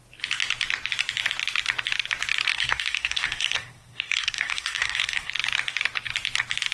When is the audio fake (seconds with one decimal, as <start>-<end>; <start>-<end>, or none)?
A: 2.5-5.3